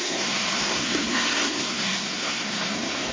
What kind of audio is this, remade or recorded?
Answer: remade